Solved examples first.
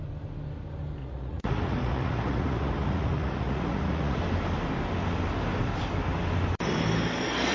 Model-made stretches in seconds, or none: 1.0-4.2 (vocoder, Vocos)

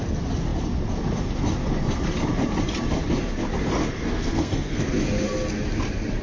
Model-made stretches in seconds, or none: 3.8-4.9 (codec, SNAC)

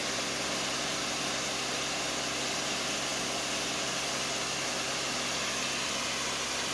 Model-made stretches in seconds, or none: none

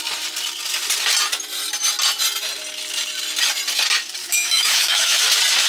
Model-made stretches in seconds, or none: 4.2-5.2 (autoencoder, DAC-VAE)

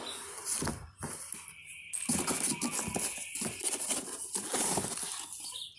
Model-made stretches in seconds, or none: none

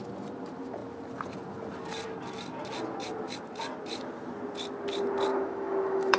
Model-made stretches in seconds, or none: 5.3-6.2 (autoencoder, DAC-VAE)